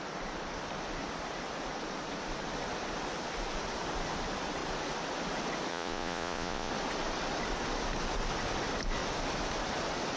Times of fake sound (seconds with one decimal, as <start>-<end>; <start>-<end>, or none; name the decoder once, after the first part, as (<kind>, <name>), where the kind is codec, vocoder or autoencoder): 5.7-6.7 (vocoder, Vocos)